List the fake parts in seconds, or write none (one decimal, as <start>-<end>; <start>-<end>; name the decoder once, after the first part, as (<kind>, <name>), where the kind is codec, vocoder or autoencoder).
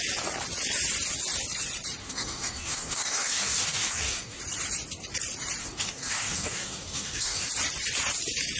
2.0-4.4 (codec, DAC); 5.6-7.5